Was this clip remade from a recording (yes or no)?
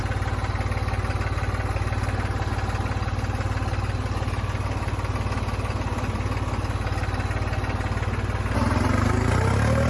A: no